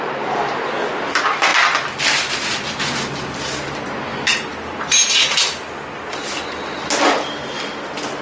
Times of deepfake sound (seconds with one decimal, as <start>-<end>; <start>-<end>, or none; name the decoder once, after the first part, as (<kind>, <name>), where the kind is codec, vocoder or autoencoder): none